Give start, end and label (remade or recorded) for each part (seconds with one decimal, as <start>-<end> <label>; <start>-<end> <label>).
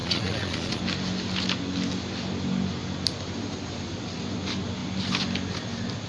0.0-0.8 remade; 0.8-6.1 recorded